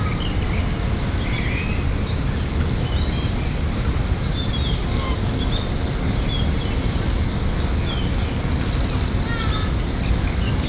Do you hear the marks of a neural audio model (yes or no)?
no